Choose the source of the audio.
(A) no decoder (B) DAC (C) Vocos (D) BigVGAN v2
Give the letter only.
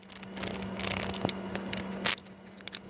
A